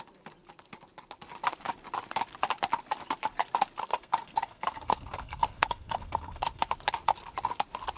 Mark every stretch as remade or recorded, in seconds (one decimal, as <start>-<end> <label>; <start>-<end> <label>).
0.0-3.8 recorded; 3.8-6.7 remade; 6.7-8.0 recorded